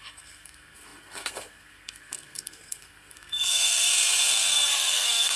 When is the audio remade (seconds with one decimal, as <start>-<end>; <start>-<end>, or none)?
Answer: 0.0-5.4